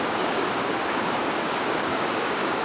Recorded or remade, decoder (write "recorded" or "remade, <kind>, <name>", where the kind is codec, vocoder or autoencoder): remade, codec, DAC